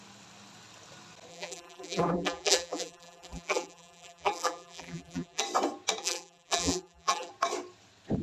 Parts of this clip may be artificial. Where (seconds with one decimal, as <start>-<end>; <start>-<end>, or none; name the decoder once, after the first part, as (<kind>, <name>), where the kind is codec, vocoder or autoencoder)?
1.3-5.4 (vocoder, BigVGAN v2); 6.0-7.3